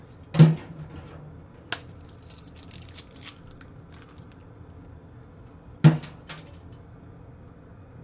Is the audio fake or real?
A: real